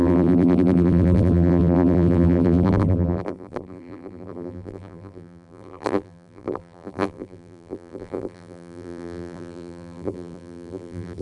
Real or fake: fake